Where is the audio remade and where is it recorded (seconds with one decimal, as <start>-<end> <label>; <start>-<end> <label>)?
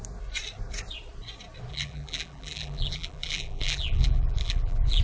0.0-1.7 recorded; 1.7-5.0 remade